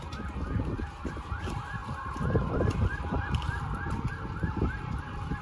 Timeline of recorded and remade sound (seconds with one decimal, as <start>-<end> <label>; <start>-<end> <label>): 0.0-1.8 recorded; 1.8-5.0 remade; 5.0-5.4 recorded